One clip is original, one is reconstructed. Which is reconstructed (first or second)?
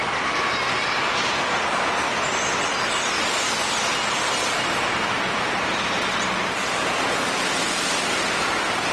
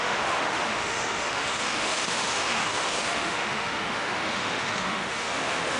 second